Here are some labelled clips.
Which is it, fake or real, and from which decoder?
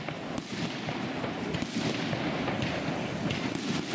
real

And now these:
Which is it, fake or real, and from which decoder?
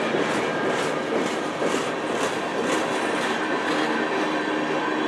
real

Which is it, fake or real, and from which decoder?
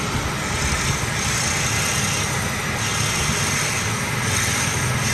real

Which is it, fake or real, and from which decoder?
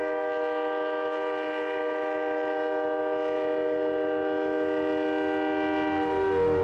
real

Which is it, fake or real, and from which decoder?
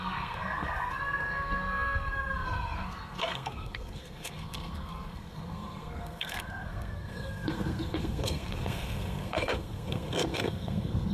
fake, codec, SNAC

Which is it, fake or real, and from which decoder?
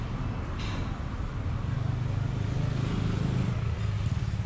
real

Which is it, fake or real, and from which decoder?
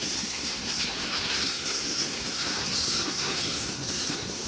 fake, codec, SNAC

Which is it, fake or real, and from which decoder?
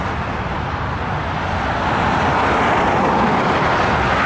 real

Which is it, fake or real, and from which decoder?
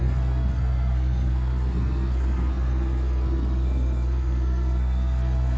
fake, codec, SNAC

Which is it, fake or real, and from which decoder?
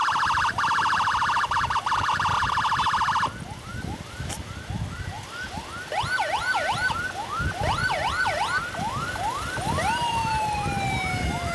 real